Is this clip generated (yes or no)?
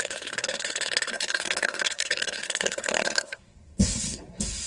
yes